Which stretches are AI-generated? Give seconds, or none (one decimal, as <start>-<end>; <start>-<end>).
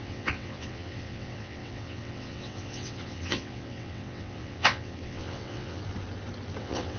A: 0.0-5.8; 6.6-7.0